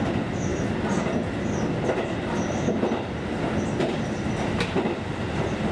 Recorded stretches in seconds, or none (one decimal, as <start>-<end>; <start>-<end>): 0.0-5.7